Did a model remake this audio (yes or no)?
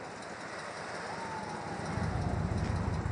no